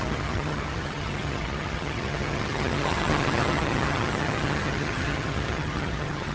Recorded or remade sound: remade